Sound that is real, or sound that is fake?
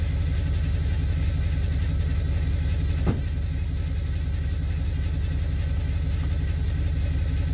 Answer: real